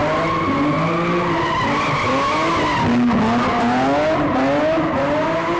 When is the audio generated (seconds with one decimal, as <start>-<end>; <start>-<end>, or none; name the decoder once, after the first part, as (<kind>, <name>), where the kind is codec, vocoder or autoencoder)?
none